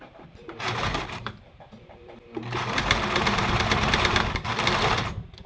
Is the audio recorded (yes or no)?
no